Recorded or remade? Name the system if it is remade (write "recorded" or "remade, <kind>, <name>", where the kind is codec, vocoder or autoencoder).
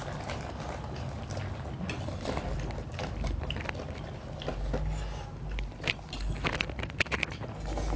recorded